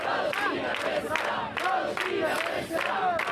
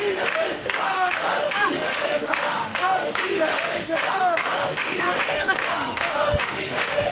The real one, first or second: first